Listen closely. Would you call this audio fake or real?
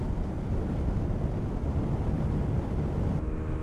real